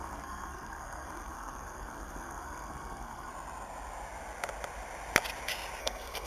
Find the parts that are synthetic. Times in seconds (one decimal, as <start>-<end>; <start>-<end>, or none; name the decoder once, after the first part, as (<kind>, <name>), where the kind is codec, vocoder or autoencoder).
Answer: 0.0-3.3 (codec, SNAC); 5.8-6.3